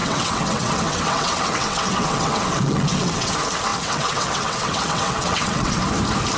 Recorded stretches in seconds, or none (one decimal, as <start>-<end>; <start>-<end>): 3.3-3.7; 5.8-6.4

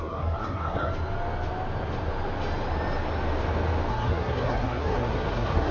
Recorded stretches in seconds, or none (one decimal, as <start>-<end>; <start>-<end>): 0.9-3.9

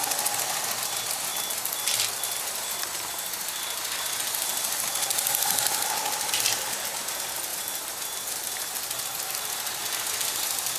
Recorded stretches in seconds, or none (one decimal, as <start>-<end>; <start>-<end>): 0.0-7.5; 9.8-10.8